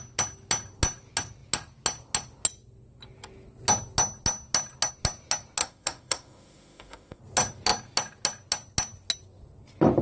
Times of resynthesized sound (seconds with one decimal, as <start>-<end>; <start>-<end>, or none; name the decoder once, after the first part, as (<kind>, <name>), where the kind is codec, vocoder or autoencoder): 5.6-7.2 (autoencoder, DAC-VAE)